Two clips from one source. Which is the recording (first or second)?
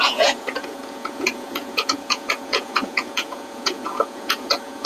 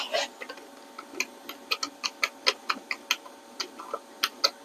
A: second